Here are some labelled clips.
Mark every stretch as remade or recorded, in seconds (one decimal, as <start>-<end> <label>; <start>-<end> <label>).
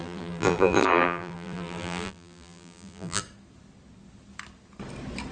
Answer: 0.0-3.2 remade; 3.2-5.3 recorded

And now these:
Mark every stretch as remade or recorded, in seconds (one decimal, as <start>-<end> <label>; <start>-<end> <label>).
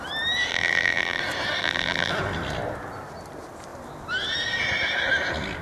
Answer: 0.0-0.5 recorded; 0.5-1.2 remade; 1.2-1.6 recorded; 1.6-2.1 remade; 2.1-5.6 recorded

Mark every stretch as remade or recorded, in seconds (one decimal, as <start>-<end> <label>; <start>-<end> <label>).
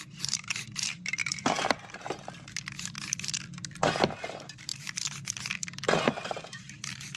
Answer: 0.0-1.2 remade; 1.2-4.2 recorded; 4.2-4.7 remade; 4.7-6.2 recorded; 6.2-7.2 remade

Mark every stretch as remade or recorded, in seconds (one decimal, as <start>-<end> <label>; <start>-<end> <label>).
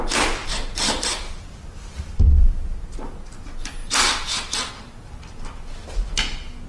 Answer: 0.0-0.4 recorded; 0.4-2.5 remade; 2.5-6.7 recorded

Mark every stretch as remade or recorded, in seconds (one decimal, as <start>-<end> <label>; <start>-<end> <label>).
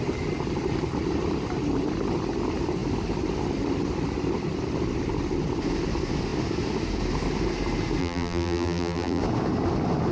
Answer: 0.0-8.0 recorded; 8.0-9.2 remade; 9.2-10.1 recorded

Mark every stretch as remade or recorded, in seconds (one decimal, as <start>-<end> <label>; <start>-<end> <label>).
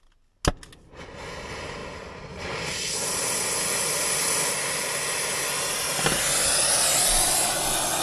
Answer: 0.0-1.8 recorded; 1.8-2.8 remade; 2.8-8.0 recorded